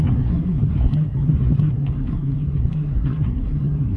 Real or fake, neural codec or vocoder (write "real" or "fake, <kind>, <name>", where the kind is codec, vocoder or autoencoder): fake, codec, SNAC